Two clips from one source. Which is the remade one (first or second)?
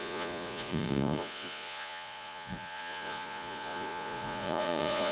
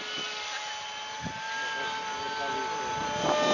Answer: first